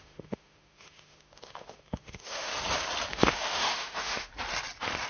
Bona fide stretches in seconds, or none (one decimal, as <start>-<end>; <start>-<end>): 2.5-3.1; 4.3-5.1